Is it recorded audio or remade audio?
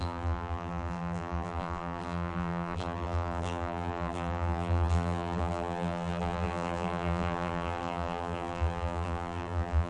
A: remade